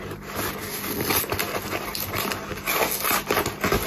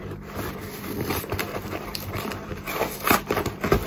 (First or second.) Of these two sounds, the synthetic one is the second